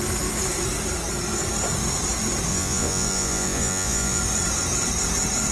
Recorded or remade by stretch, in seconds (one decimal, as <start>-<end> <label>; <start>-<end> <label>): 0.0-2.5 recorded; 2.5-4.2 remade; 4.2-5.5 recorded